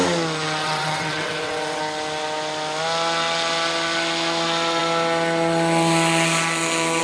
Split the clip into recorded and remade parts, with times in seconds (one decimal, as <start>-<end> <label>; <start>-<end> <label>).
0.0-0.6 recorded; 0.6-1.8 remade; 1.8-7.0 recorded